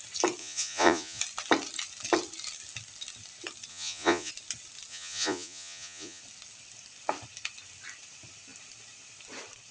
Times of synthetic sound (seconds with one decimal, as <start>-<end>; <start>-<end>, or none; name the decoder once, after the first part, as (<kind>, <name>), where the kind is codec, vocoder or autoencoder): 0.4-1.2 (vocoder, Vocos); 3.7-4.3; 4.9-6.2

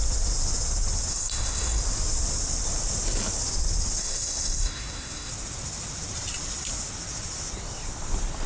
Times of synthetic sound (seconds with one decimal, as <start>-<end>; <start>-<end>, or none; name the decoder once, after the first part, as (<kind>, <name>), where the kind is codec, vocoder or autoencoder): 1.1-1.8 (codec, SNAC); 4.0-5.3